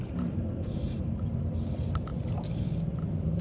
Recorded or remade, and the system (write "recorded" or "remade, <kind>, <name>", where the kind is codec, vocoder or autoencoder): remade, vocoder, BigVGAN v2